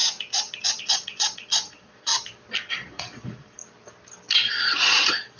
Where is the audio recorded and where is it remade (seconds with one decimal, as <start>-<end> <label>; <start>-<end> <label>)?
0.0-0.8 recorded; 0.8-2.1 remade; 2.1-2.7 recorded; 2.7-3.6 remade; 3.6-4.5 recorded; 4.5-5.4 remade